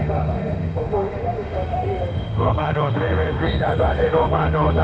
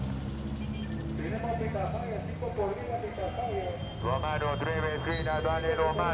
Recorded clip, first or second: second